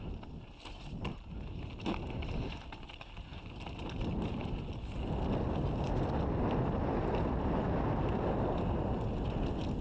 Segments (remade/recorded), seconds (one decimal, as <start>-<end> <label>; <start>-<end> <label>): 0.0-9.8 recorded